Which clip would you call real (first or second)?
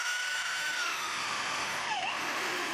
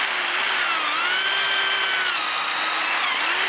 second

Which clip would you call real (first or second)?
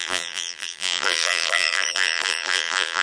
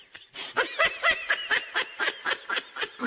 second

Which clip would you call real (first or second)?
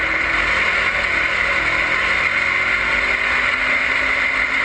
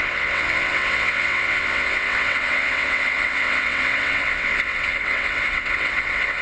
first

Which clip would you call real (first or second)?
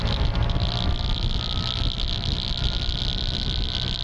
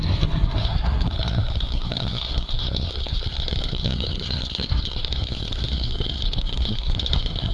first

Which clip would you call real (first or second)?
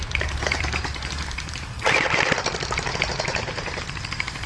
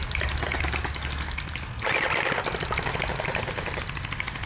second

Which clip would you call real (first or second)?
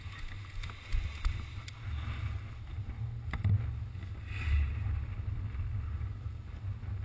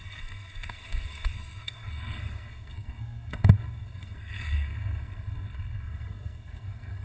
first